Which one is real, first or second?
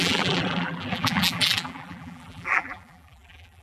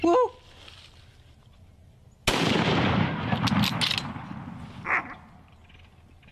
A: second